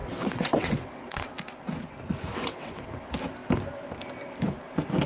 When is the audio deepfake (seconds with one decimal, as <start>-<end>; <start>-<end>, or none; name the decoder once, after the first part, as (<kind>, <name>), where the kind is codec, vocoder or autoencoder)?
0.0-1.3 (vocoder, WaveNeXt); 2.3-2.9